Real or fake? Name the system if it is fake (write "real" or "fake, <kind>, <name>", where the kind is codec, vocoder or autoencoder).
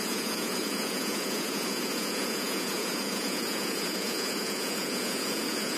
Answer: fake, vocoder, Vocos